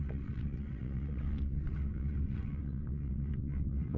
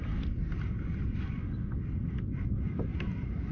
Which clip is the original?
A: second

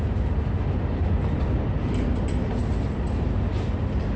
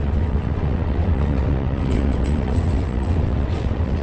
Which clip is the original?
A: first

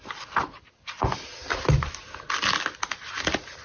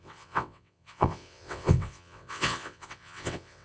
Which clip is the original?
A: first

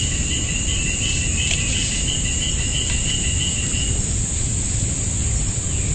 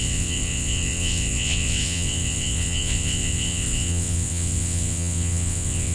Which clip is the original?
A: first